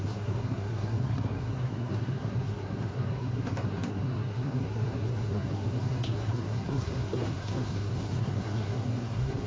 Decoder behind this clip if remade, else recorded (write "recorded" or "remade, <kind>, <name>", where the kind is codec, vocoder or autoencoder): remade, codec, SNAC